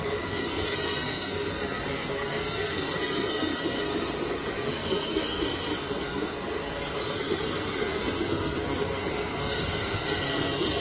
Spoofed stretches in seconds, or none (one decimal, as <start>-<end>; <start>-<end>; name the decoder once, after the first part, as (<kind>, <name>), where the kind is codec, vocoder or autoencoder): 0.0-3.9 (codec, SNAC); 4.5-10.8